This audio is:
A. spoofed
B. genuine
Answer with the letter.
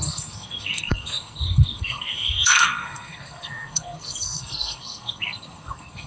A